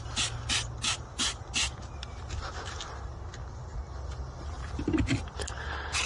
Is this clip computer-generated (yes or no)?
no